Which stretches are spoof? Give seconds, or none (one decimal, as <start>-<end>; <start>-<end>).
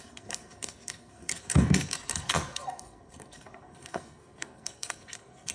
0.0-5.5